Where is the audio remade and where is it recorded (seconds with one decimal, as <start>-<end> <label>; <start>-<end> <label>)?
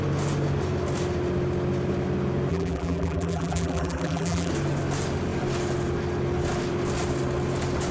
0.0-2.5 recorded; 2.5-4.5 remade; 4.5-7.9 recorded